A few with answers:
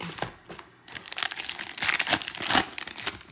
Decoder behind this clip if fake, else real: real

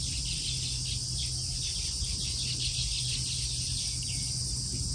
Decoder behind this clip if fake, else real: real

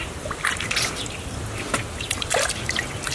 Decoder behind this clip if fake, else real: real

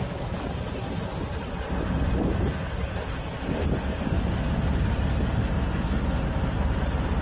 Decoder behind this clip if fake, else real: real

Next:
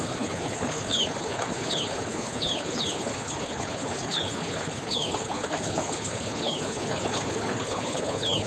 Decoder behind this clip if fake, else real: fake, codec, HILCodec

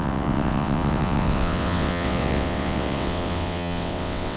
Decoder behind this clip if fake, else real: fake, vocoder, WaveNeXt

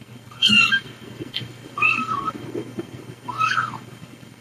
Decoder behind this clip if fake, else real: fake, codec, SNAC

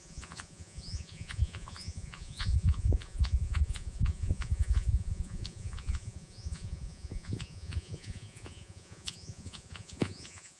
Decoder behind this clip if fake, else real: fake, vocoder, Vocos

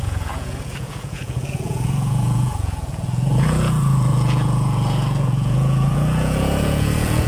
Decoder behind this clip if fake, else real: fake, vocoder, Vocos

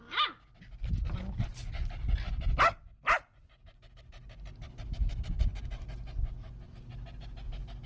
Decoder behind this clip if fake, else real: real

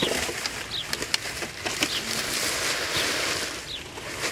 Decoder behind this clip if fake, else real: real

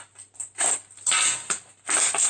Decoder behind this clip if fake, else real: real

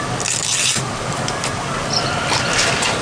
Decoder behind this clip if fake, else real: real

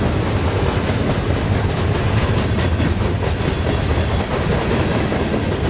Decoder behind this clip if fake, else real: real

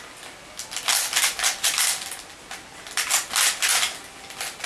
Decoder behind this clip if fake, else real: real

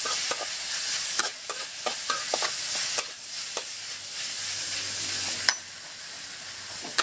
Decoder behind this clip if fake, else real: real